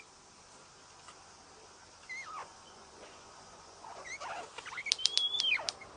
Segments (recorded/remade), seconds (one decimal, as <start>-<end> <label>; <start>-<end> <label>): 0.0-2.4 recorded; 2.4-4.1 remade; 4.1-6.0 recorded